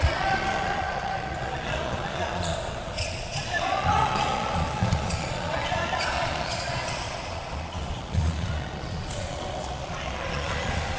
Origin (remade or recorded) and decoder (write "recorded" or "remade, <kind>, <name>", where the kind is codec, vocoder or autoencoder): remade, vocoder, Vocos